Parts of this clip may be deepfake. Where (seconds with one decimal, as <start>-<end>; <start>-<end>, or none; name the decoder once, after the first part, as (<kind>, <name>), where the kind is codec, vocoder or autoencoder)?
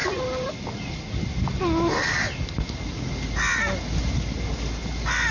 none